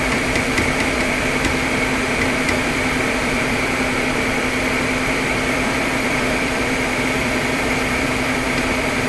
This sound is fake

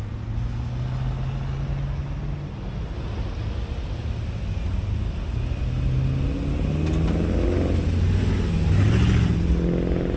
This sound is real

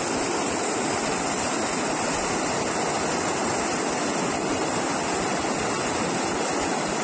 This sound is real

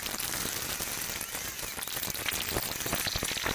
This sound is real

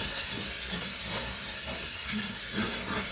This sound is fake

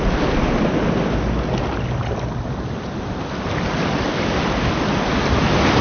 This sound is real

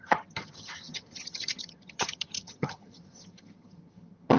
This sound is fake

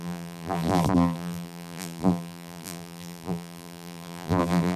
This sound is fake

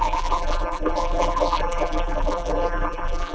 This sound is fake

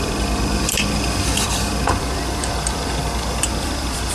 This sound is fake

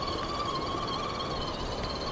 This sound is real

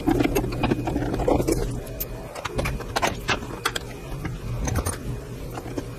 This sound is real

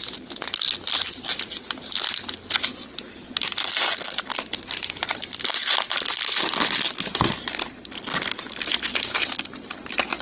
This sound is real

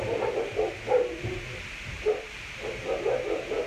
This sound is real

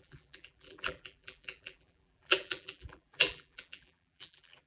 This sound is fake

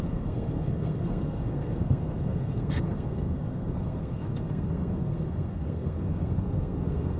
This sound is fake